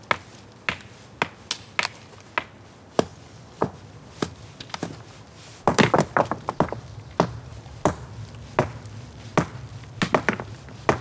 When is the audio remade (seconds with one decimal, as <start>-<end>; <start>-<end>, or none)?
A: 3.1-3.8